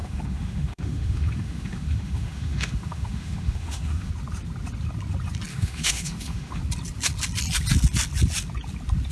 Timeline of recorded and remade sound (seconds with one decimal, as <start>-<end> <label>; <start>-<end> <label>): 0.0-4.1 remade; 4.1-5.5 recorded; 5.5-6.6 remade; 6.6-9.1 recorded